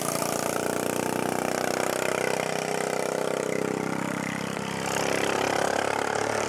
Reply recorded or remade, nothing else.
recorded